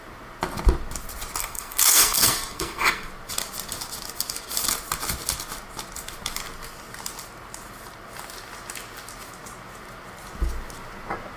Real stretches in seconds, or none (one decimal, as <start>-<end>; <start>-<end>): 0.0-1.4; 3.1-11.4